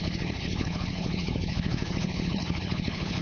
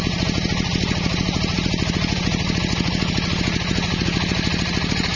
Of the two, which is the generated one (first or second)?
first